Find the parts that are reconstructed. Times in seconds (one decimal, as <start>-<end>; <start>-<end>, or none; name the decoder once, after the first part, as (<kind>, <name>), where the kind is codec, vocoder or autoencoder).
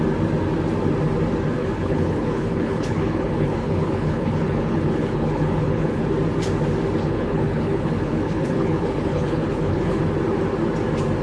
1.6-6.1 (codec, HILCodec); 7.0-10.0